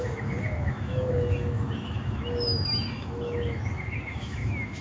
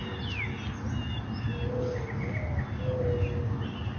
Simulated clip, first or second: first